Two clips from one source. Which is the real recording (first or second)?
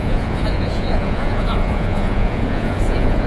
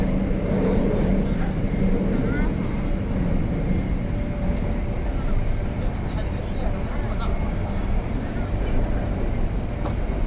second